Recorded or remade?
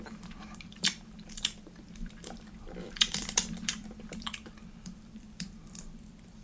remade